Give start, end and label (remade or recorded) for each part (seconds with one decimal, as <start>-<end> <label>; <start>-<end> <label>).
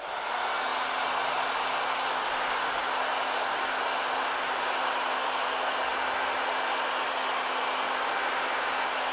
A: 0.0-9.1 recorded